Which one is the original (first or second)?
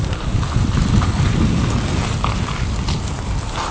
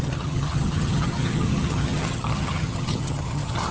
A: first